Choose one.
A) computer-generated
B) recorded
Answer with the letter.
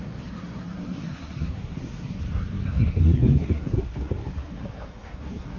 A